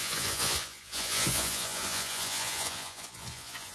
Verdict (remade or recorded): remade